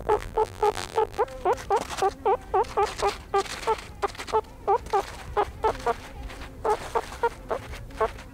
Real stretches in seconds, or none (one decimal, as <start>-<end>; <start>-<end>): 1.2-8.3